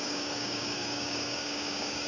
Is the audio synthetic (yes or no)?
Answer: yes